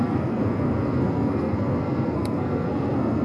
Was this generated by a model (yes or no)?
yes